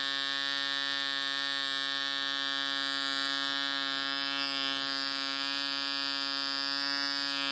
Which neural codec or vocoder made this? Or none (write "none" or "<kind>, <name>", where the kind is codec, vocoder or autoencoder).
none